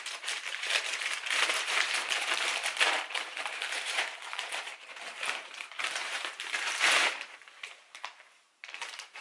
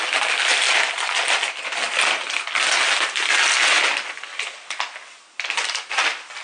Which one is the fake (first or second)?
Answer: first